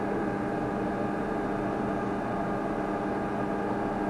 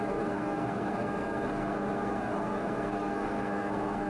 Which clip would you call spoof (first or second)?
second